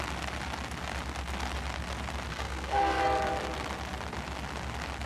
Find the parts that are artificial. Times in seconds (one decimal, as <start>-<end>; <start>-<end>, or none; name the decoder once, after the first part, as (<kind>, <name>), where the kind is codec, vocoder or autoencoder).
2.3-3.0 (codec, SNAC)